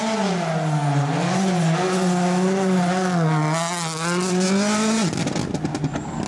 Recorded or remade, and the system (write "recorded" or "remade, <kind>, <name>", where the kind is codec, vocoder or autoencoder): recorded